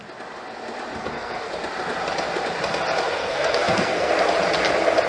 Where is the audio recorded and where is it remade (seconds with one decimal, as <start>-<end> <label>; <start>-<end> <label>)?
0.0-1.0 recorded; 1.0-1.5 remade; 1.5-3.2 recorded; 3.2-4.1 remade; 4.1-5.1 recorded